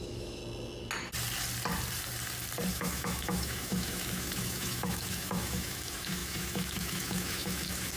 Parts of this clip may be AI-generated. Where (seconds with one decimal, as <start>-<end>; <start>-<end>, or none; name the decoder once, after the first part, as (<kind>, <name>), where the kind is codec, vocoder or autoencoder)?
0.0-0.4 (autoencoder, DAC-VAE); 2.7-8.0